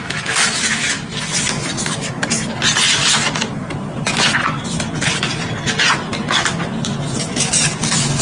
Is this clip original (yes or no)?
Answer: yes